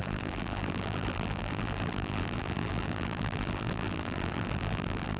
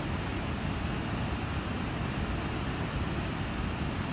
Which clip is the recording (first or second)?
second